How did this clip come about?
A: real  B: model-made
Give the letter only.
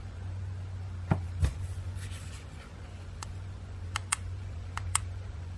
B